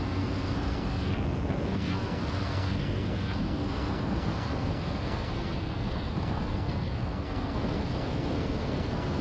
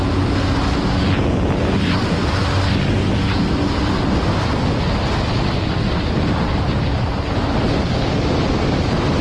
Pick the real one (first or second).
second